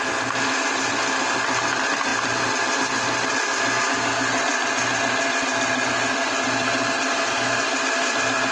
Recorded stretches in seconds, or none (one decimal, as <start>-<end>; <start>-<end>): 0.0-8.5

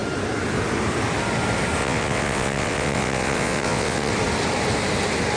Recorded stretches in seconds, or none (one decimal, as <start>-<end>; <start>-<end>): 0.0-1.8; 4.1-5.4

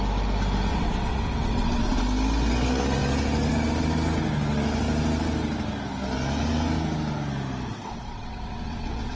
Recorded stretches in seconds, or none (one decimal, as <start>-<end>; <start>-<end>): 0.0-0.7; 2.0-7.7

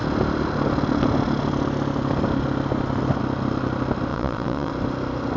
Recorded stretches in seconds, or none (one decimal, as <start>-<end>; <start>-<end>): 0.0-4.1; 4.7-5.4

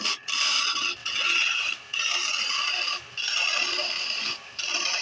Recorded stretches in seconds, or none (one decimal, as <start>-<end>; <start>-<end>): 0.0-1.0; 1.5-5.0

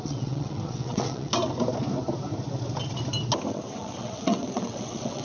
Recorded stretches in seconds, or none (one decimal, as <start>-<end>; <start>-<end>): 1.3-3.5

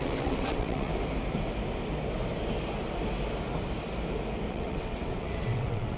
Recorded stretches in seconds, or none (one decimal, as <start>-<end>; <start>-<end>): 0.9-4.5

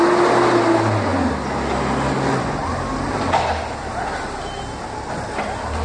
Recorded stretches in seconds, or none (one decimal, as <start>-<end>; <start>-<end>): 0.0-5.8